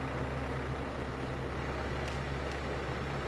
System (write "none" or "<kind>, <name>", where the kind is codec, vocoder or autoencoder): none